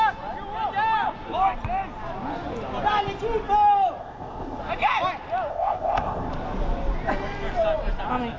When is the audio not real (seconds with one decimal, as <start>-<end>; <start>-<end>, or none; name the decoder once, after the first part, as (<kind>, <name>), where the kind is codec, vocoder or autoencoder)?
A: 4.0-4.6 (codec, ZipCodec); 5.5-6.3